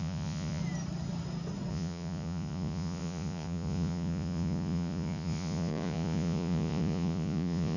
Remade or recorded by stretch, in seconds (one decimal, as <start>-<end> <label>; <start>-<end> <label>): 0.0-0.6 remade; 0.6-1.7 recorded; 1.7-7.8 remade